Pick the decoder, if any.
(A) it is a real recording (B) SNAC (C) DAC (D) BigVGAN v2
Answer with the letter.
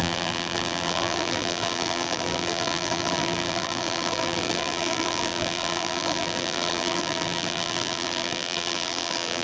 D